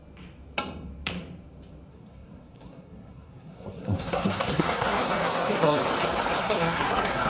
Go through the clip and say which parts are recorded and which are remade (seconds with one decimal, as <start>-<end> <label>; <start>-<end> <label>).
0.0-1.9 recorded; 1.9-5.8 remade; 5.8-6.4 recorded; 6.4-7.3 remade